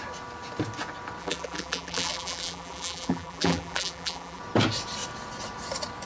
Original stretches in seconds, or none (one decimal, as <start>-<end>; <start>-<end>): 0.0-1.2; 4.4-6.1